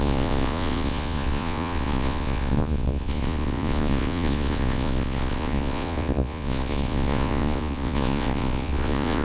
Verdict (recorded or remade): remade